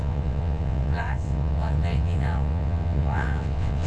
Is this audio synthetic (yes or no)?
yes